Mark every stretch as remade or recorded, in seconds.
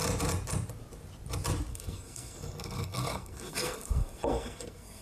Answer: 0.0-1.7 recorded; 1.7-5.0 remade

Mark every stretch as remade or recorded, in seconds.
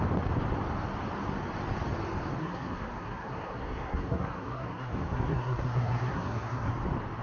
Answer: 0.0-2.4 recorded; 2.4-6.7 remade; 6.7-7.2 recorded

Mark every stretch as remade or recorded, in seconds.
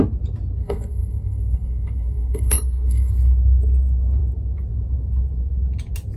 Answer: 0.0-0.6 recorded; 0.6-3.1 remade; 3.1-6.2 recorded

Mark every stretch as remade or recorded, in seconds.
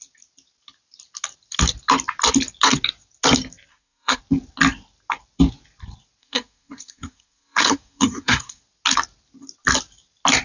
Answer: 0.0-3.7 recorded; 3.7-4.2 remade; 4.2-6.2 recorded; 6.2-8.6 remade; 8.6-10.4 recorded